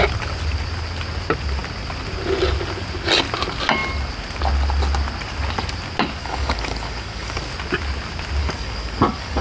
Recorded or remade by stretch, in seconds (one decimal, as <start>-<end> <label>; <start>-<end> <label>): 0.0-6.2 recorded; 6.2-7.4 remade; 7.4-8.4 recorded; 8.4-9.4 remade